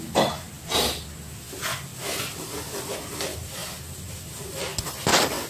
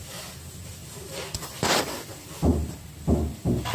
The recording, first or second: first